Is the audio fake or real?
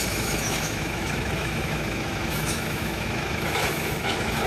fake